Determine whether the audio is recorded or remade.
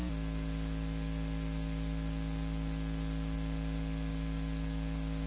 recorded